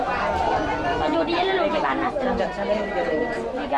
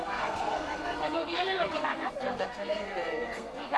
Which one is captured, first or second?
first